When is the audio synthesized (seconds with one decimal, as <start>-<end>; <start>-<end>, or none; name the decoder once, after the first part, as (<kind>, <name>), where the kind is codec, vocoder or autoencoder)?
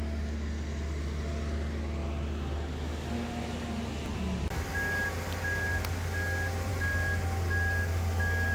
none